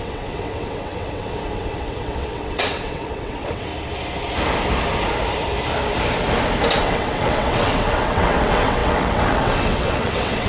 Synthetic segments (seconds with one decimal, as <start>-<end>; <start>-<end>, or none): 0.0-3.7; 6.8-10.5